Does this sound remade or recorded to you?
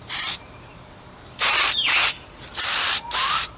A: remade